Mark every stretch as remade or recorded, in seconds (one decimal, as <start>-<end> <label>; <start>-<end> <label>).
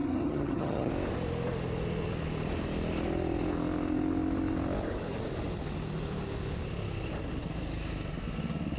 0.0-0.9 remade; 0.9-8.8 recorded